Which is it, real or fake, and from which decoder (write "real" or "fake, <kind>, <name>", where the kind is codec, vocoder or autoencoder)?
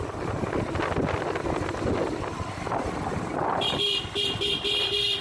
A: real